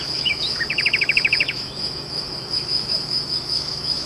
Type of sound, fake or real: fake